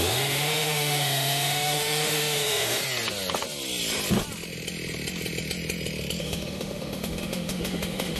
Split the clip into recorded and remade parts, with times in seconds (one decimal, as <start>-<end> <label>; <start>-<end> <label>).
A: 0.0-2.8 remade; 2.8-6.2 recorded; 6.2-8.2 remade